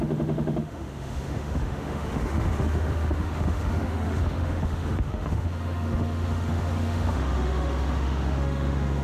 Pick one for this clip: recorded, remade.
remade